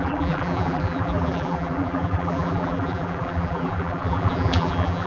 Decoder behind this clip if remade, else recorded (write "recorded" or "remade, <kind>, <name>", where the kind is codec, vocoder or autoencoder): remade, vocoder, BigVGAN v2